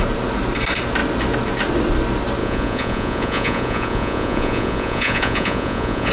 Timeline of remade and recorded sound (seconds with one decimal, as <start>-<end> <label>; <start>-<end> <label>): 0.0-2.4 recorded; 2.4-6.1 remade